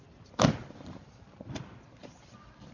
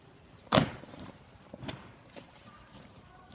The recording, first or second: first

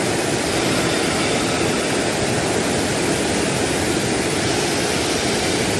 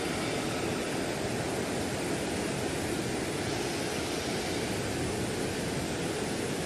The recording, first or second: second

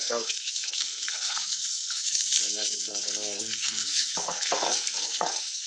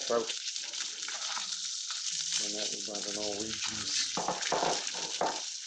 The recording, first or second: second